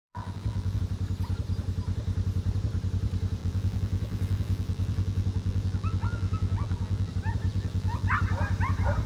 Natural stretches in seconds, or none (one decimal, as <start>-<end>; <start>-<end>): 0.8-3.4; 7.1-7.5; 8.1-9.1